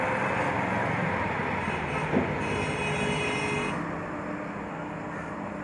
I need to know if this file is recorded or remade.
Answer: recorded